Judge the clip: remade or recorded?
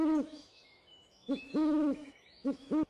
remade